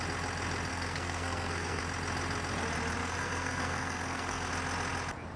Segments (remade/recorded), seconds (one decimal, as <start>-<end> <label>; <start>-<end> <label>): 0.0-0.7 recorded; 0.7-1.8 remade; 1.8-3.0 recorded; 3.0-4.5 remade; 4.5-5.4 recorded